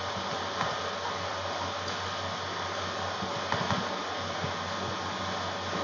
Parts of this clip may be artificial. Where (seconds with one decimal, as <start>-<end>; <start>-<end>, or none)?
none